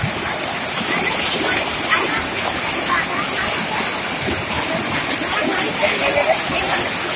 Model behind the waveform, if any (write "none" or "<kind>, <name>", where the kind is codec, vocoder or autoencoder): none